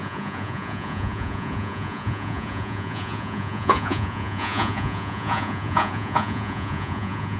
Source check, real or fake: fake